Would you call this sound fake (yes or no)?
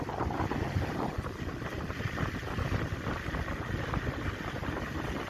no